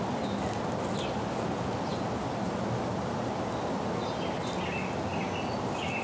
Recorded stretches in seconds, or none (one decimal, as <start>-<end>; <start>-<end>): 0.0-6.0

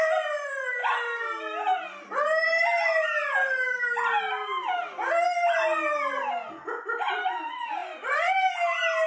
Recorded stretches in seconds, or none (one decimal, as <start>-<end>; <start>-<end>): 0.0-9.1

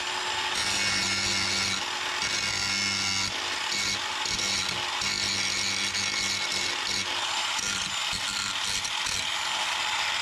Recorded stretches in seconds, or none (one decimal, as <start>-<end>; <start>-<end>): 0.0-10.2